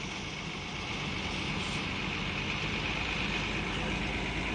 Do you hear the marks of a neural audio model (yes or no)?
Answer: no